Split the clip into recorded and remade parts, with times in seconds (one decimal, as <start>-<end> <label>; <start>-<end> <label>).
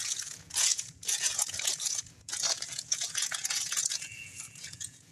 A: 0.0-5.1 remade